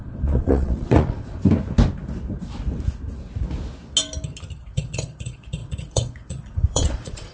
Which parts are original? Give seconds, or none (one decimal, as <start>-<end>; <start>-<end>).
1.4-4.6